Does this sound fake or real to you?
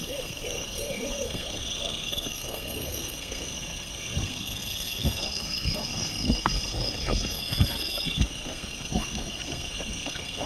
fake